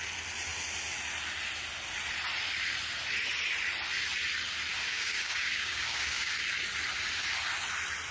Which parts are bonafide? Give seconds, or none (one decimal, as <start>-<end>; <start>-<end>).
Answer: 0.0-4.9; 6.3-8.1